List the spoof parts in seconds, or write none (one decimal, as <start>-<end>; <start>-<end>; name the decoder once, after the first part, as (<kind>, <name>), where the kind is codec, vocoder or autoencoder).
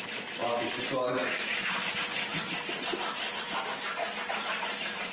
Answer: none